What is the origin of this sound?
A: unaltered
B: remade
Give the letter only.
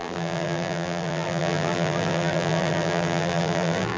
B